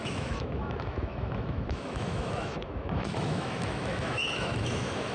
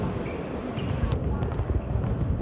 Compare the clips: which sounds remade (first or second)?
first